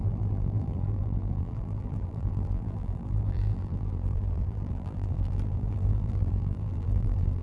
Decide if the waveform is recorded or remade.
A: remade